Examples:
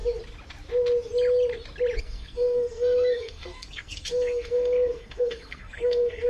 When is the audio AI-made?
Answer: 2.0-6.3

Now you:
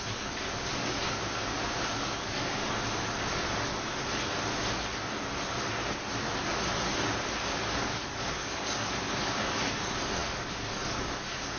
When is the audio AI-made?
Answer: 0.0-2.6; 7.4-11.6

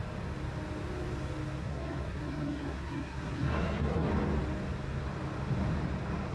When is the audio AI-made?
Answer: 1.6-4.1